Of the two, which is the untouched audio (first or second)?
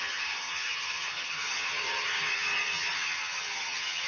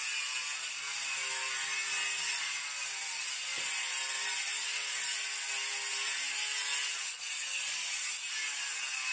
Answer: second